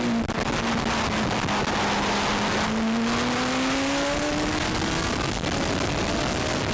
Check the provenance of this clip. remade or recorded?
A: recorded